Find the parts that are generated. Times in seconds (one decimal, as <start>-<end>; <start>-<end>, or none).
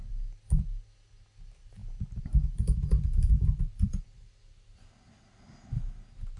none